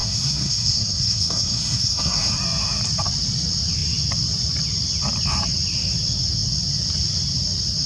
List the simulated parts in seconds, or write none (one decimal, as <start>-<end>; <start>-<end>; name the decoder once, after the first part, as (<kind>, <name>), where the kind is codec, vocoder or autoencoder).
0.0-2.3 (codec, SNAC)

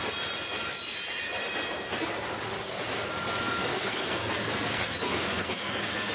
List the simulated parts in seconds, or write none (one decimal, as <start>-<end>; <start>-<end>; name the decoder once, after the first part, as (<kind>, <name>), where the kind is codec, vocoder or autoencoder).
3.5-6.1 (codec, SNAC)

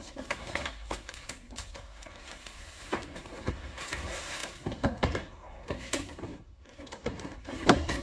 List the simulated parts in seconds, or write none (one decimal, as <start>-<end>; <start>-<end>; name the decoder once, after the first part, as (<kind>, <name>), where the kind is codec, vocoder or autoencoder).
0.0-8.0 (codec, SNAC)

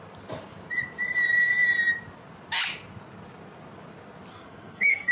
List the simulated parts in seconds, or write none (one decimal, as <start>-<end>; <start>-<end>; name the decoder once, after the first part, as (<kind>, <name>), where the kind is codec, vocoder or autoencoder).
4.3-5.1 (codec, SNAC)

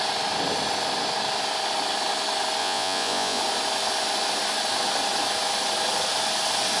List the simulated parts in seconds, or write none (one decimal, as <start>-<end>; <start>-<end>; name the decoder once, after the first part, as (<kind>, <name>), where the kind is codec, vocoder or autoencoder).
2.6-3.4 (vocoder, Vocos)

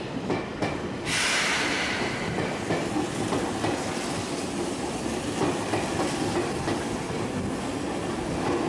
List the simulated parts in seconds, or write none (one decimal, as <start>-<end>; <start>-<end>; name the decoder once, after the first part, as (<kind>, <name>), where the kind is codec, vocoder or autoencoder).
none

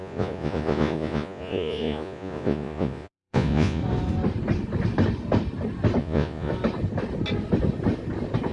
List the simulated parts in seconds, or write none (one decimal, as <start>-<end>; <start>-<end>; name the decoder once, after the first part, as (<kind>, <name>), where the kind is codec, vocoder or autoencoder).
0.0-3.8 (vocoder, Vocos); 6.0-6.5